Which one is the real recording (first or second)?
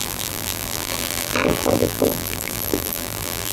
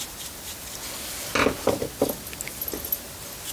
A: second